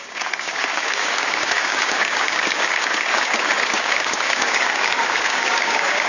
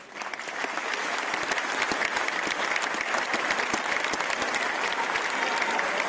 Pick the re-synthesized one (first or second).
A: first